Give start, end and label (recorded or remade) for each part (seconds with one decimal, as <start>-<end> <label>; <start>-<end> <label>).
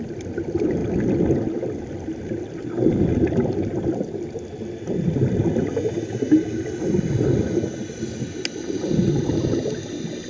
0.0-10.3 recorded